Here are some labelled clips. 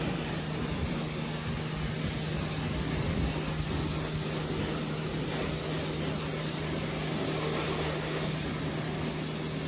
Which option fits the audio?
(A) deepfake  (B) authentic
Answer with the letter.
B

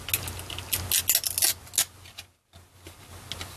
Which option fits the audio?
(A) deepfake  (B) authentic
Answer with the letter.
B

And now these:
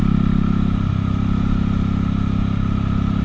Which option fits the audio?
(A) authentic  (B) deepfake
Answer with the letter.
A